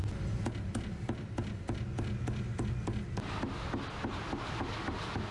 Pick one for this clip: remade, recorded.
recorded